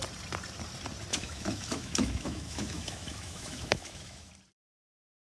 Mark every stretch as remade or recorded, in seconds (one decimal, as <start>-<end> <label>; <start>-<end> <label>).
0.0-1.1 recorded; 1.1-4.3 remade; 4.3-5.3 recorded